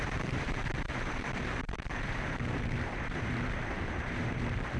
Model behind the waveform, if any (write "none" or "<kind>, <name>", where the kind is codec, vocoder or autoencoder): vocoder, BigVGAN v2